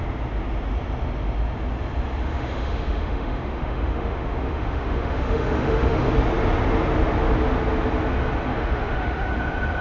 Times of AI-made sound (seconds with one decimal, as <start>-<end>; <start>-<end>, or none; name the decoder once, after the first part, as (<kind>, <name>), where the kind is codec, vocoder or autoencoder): 2.2-6.1 (autoencoder, DAC-VAE); 8.5-9.3